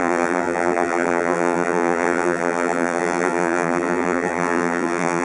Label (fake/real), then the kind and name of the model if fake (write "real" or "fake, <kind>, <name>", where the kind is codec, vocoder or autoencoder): fake, vocoder, BigVGAN v2